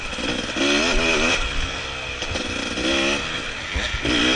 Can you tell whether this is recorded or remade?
recorded